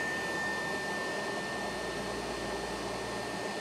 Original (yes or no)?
yes